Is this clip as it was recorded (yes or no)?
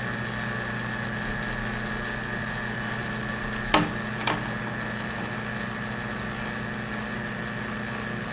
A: yes